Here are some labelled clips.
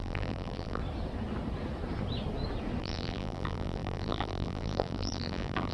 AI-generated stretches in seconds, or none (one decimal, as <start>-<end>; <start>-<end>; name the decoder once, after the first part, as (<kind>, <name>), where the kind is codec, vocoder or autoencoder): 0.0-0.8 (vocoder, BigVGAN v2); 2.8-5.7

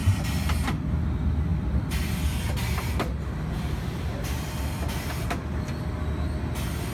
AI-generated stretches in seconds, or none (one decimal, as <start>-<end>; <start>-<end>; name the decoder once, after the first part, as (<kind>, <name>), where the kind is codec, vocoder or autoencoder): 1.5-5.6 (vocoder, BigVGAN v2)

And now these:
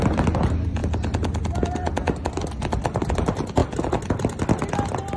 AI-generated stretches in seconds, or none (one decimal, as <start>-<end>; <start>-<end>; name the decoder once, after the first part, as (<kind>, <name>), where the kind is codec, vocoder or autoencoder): none

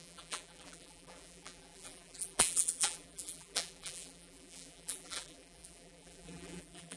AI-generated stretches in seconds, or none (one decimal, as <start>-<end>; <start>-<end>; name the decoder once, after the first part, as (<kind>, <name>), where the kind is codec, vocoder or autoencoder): 0.0-7.0 (vocoder, BigVGAN v2)

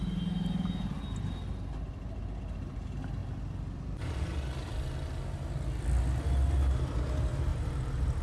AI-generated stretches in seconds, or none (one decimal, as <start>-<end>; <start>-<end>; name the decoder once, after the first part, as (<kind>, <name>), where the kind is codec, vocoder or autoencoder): 3.2-4.7 (vocoder, BigVGAN v2)